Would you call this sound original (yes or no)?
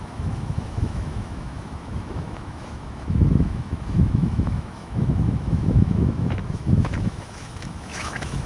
no